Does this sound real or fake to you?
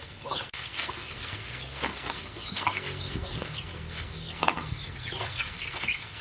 fake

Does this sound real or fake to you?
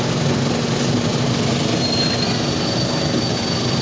real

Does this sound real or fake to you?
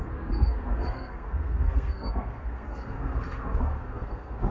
fake